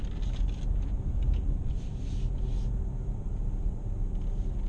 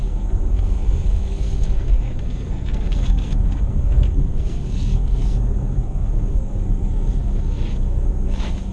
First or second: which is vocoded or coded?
second